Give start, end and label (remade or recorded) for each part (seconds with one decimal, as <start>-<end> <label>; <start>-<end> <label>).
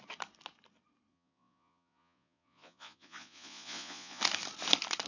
0.0-1.1 recorded; 1.1-4.2 remade; 4.2-5.1 recorded